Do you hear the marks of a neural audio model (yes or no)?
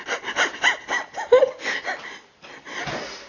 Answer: no